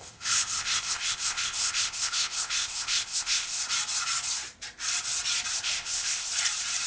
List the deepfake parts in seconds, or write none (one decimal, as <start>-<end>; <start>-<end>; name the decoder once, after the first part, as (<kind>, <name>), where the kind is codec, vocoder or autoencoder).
0.0-3.6 (codec, ZipCodec); 5.5-6.3